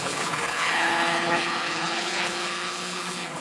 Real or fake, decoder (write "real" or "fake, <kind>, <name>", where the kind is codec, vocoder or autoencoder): fake, codec, HILCodec